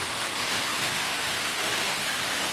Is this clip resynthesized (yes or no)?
yes